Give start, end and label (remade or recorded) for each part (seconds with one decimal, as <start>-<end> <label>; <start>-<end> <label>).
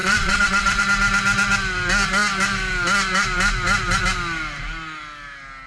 0.0-0.8 remade; 0.8-5.7 recorded